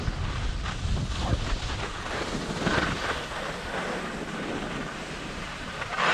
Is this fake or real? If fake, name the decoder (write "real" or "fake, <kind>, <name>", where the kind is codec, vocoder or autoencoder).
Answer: real